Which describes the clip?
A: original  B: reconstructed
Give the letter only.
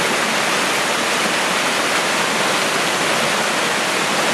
A